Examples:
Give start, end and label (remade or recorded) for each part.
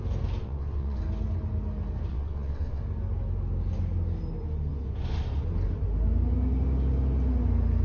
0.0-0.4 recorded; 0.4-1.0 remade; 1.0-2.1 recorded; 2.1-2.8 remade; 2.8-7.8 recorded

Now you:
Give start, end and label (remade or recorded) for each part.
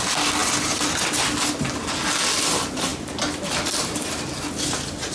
0.0-5.1 recorded